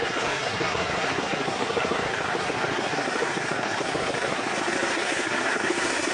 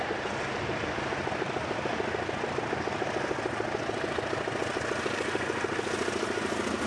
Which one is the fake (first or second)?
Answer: first